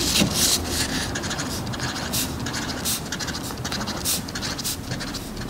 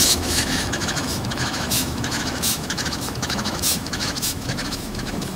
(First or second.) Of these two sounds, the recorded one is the first